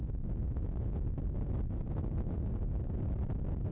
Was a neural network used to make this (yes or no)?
no